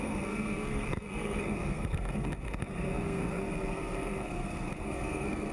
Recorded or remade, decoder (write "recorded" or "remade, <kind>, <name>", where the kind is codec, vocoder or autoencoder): remade, codec, SNAC